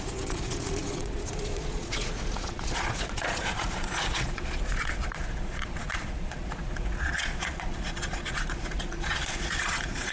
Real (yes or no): no